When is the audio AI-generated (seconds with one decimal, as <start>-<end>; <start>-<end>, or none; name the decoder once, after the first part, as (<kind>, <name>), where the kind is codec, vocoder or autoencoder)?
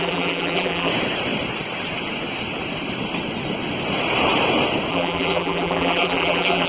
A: 0.0-0.9 (vocoder, BigVGAN v2); 4.9-6.7